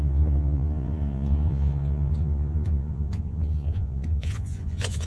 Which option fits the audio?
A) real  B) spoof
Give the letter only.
B